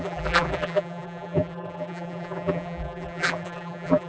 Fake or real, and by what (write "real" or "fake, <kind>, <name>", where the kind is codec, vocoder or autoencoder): fake, vocoder, BigVGAN v2